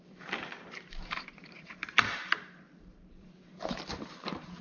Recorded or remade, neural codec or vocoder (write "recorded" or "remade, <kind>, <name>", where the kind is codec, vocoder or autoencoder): remade, vocoder, BigVGAN v2